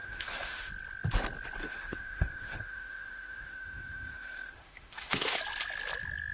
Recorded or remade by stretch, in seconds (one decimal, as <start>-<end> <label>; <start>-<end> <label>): 0.0-0.7 remade; 0.7-1.6 recorded; 1.6-5.4 remade; 5.4-6.3 recorded